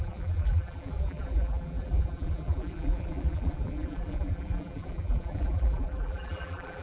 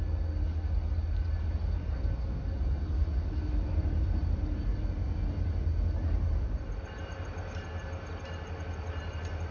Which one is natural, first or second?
second